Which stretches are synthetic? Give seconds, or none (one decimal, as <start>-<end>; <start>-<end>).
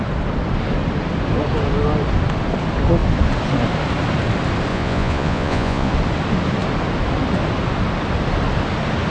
4.7-5.9